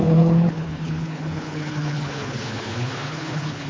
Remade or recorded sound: remade